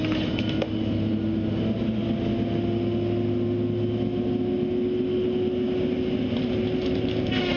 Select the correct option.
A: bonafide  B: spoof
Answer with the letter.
A